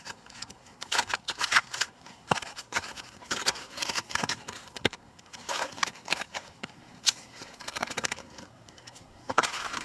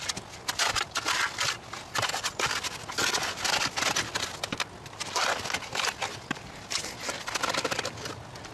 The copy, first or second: first